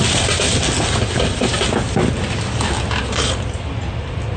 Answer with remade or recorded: recorded